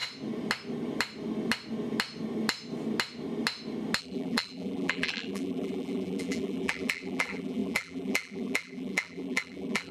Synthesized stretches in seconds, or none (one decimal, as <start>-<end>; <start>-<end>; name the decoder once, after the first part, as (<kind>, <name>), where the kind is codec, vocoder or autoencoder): 4.0-9.9 (vocoder, BigVGAN v2)